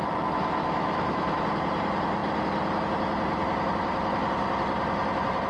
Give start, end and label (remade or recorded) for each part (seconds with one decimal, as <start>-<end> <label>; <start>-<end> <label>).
0.0-0.6 recorded; 0.6-1.4 remade; 1.4-5.5 recorded